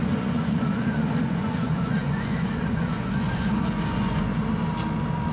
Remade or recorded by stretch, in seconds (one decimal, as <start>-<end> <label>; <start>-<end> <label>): 0.0-4.3 remade; 4.3-5.3 recorded